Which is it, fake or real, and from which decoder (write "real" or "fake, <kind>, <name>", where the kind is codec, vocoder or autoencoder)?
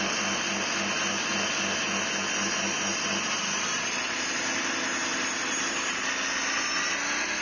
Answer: real